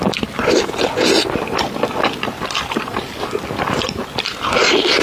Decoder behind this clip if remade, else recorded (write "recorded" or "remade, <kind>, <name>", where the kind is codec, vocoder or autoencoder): remade, vocoder, BigVGAN v2